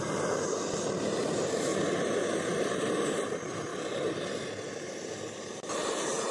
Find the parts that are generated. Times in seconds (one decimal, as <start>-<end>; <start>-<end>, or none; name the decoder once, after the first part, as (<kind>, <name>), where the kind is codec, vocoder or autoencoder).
0.0-1.7 (vocoder, BigVGAN v2); 2.8-3.7; 5.5-6.3